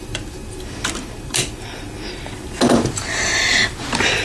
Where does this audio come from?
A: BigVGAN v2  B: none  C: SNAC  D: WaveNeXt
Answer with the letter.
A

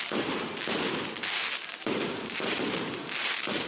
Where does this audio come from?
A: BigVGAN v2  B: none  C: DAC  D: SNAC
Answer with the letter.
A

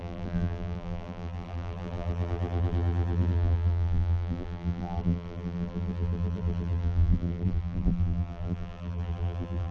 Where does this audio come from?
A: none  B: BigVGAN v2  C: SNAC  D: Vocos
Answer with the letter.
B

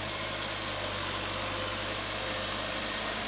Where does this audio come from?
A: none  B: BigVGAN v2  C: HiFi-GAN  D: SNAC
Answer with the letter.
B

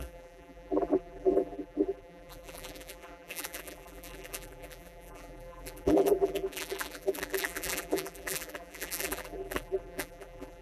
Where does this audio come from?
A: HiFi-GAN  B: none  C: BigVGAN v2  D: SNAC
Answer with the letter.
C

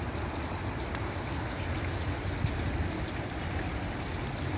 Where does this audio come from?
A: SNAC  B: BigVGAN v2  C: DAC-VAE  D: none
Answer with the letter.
D